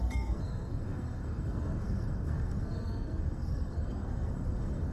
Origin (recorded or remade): remade